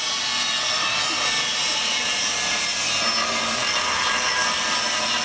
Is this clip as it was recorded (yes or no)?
yes